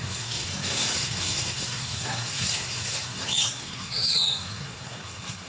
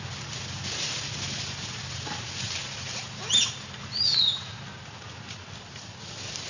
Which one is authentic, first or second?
second